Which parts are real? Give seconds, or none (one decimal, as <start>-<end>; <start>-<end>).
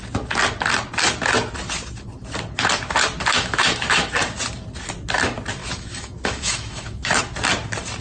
0.0-3.3; 4.1-5.6; 7.2-8.0